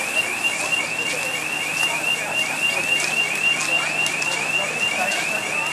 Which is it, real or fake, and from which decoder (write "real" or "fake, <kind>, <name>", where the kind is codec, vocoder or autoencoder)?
real